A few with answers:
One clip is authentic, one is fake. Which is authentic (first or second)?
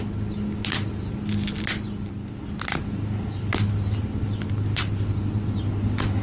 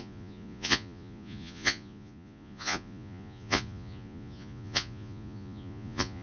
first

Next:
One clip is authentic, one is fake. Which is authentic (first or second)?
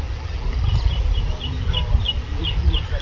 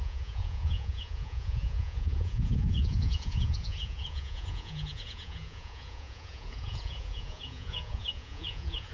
first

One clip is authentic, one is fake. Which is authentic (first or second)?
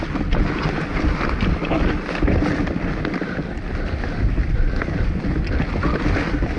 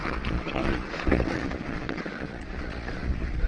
first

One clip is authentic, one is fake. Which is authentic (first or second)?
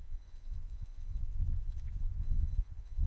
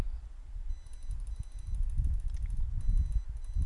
second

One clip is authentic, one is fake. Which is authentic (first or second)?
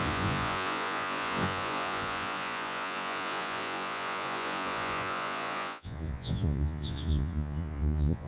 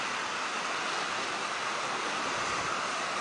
second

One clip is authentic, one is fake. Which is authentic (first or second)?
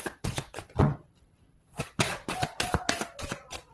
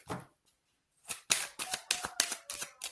second